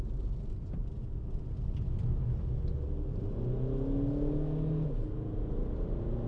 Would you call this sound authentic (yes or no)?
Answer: yes